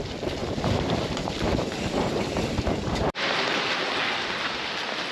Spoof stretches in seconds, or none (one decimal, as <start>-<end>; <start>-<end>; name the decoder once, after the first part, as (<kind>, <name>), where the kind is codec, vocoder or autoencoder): 0.4-3.5 (vocoder, BigVGAN v2)

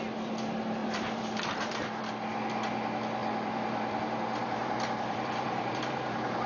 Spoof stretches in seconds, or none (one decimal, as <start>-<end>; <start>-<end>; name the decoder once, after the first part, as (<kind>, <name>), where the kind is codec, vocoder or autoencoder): 0.8-2.1 (vocoder, BigVGAN v2); 3.2-4.0; 4.4-6.5

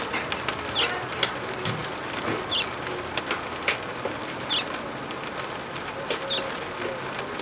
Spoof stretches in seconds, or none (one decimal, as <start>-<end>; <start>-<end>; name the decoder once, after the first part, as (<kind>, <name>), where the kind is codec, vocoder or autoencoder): none